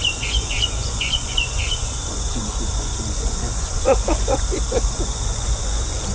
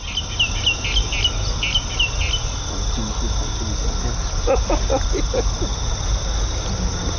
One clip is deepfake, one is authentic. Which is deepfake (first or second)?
first